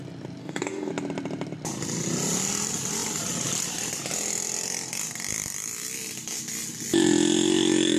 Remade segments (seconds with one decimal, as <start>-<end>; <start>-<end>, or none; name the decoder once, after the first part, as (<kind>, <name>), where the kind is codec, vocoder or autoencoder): 0.4-0.9 (codec, DAC)